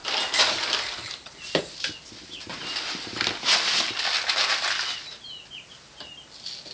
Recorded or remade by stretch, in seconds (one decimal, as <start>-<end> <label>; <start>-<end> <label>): 0.0-6.7 recorded